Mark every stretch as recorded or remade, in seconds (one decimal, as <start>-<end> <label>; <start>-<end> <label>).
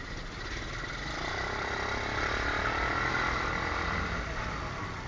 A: 0.0-5.1 recorded